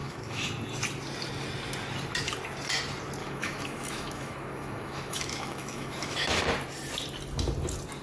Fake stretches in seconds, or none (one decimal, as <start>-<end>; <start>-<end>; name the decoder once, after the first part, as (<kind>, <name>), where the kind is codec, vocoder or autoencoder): 0.0-0.5 (autoencoder, DAC-VAE); 3.2-6.4